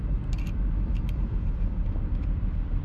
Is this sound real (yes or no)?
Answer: yes